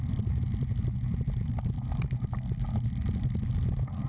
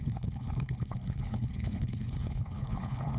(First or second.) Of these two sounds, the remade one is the second